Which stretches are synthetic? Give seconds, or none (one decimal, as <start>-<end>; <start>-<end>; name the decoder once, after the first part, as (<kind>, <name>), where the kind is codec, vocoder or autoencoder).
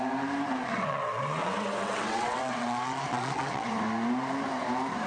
0.6-3.7 (vocoder, WaveNeXt)